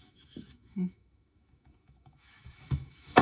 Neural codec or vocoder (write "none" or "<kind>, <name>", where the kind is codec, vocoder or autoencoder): autoencoder, DAC-VAE